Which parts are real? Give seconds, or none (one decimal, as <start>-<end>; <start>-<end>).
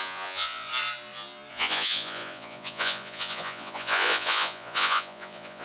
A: 0.7-1.5